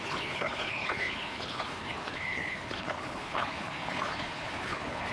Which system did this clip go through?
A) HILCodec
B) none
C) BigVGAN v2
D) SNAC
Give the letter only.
A